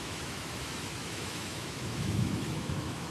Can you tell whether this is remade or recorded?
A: remade